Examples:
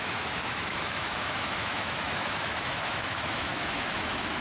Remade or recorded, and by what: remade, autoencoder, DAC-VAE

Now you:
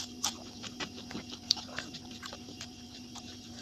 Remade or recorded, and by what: remade, vocoder, BigVGAN v2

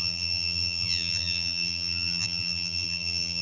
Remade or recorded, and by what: remade, vocoder, BigVGAN v2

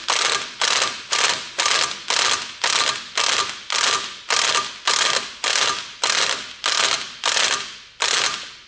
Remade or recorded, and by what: recorded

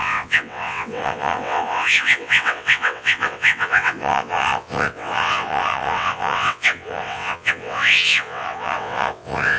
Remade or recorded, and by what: remade, vocoder, WaveNeXt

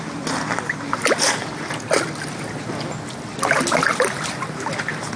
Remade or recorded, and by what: recorded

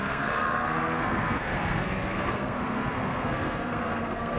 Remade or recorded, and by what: remade, codec, SNAC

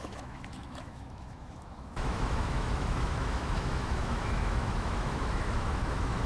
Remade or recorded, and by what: remade, autoencoder, DAC-VAE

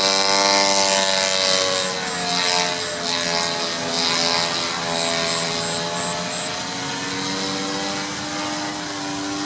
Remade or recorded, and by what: recorded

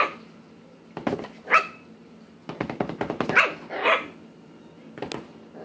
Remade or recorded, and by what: recorded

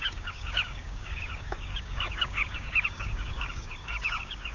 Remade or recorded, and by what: remade, codec, DAC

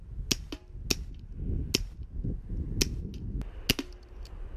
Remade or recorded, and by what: recorded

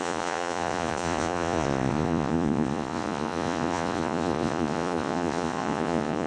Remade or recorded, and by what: remade, vocoder, Vocos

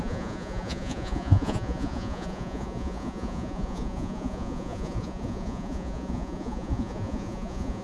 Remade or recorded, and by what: remade, vocoder, Vocos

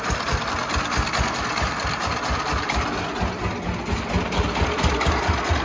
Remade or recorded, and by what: recorded